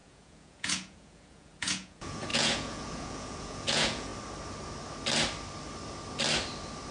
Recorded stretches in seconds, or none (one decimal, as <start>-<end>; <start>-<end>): 4.1-6.9